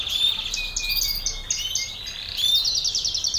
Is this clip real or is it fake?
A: real